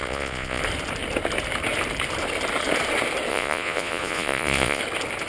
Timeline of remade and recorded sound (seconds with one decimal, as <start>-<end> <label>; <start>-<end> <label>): 0.0-0.6 remade; 0.6-3.3 recorded; 3.3-4.8 remade; 4.8-5.3 recorded